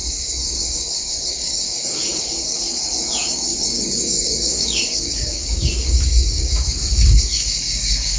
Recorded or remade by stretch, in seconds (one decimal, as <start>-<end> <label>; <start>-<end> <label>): 0.0-8.2 remade